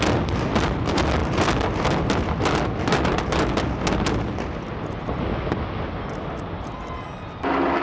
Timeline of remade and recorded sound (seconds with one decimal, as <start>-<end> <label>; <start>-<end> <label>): 0.0-7.8 recorded